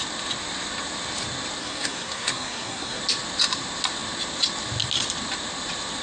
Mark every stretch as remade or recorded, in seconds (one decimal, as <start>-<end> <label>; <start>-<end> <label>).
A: 0.0-1.6 recorded; 1.6-3.0 remade; 3.0-6.0 recorded